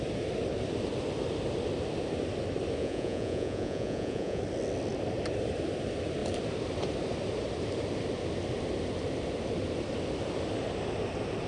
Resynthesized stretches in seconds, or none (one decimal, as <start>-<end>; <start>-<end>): 2.8-4.4